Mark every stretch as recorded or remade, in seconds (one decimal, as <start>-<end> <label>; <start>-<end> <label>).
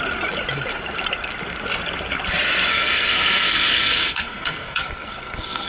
0.0-2.7 recorded; 2.7-5.7 remade